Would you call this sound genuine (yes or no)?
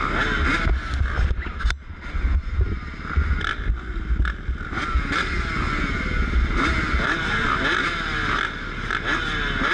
yes